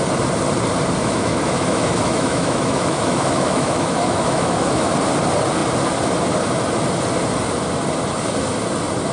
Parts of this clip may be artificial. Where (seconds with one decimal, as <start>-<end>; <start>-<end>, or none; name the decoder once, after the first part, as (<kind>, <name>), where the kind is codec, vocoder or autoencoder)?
1.0-4.9 (autoencoder, DAC-VAE)